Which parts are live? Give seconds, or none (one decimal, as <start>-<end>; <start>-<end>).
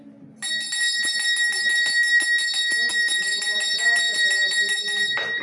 0.0-3.0